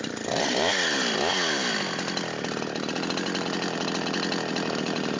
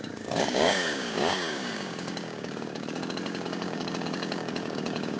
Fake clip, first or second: second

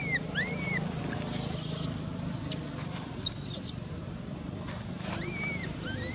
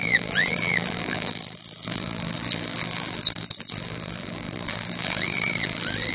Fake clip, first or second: second